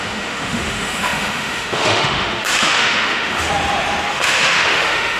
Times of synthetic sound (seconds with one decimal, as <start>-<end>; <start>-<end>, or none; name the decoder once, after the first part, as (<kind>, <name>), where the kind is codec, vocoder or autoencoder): 0.0-3.5 (autoencoder, DAC-VAE); 4.1-5.2